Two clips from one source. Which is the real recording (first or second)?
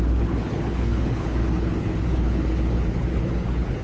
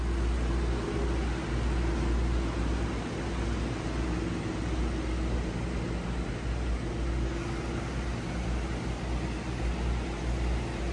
second